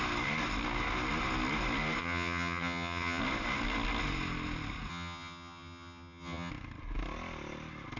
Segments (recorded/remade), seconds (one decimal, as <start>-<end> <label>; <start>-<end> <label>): 0.0-2.0 recorded; 2.0-3.2 remade; 3.2-4.9 recorded; 4.9-6.5 remade; 6.5-8.0 recorded